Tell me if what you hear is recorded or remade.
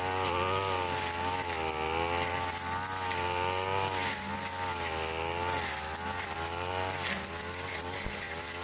recorded